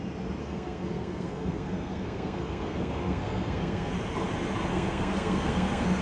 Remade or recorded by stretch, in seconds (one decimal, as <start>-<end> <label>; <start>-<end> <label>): 0.0-0.4 recorded; 0.4-3.9 remade; 3.9-4.7 recorded; 4.7-6.0 remade